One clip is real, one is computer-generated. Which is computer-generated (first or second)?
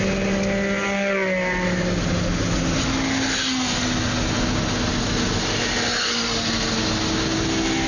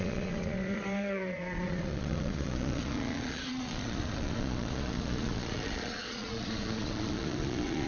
second